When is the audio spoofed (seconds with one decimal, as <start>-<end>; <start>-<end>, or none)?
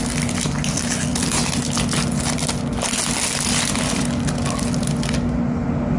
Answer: none